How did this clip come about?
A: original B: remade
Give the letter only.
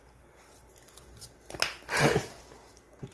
A